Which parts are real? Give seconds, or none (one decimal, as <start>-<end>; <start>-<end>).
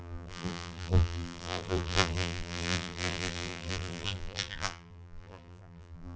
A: none